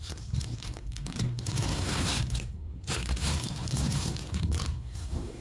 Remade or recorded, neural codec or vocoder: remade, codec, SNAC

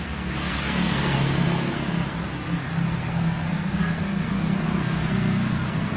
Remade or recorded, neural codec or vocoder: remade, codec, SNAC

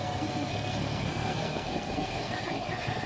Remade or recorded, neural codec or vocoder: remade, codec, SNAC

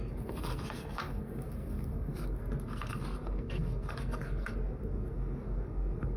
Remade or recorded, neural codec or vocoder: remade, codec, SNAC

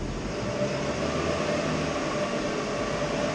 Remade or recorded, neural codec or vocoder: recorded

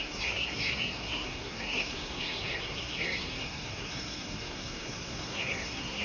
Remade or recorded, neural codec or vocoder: remade, codec, SNAC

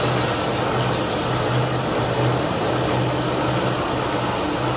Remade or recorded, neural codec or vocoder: recorded